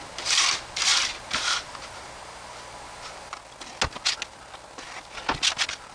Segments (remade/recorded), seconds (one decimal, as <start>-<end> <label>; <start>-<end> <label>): 0.0-5.9 recorded

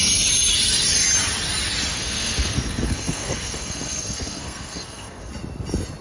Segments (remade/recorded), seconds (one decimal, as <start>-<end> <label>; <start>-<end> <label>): 0.0-1.9 recorded; 1.9-5.3 remade; 5.3-6.0 recorded

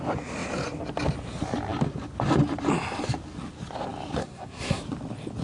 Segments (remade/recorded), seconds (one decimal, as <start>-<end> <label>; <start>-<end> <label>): 0.0-4.2 recorded; 4.2-4.8 remade; 4.8-5.4 recorded